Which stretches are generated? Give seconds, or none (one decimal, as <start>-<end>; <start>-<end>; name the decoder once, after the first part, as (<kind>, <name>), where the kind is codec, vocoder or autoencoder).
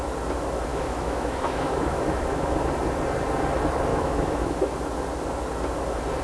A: 0.7-2.5 (autoencoder, DAC-VAE); 3.9-4.7